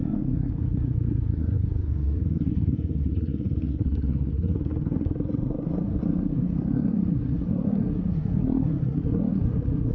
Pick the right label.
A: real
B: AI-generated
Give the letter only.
B